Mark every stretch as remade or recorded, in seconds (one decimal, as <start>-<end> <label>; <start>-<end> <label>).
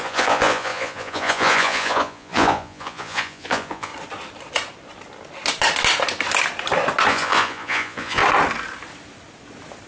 0.0-3.9 remade; 3.9-7.1 recorded; 7.1-8.2 remade; 8.2-9.9 recorded